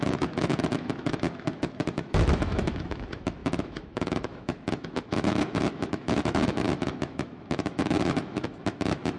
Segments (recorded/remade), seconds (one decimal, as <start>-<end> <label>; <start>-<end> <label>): 0.0-9.2 remade

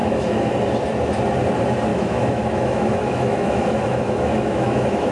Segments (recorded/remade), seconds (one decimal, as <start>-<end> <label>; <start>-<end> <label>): 0.0-0.5 remade; 0.5-1.9 recorded; 1.9-5.1 remade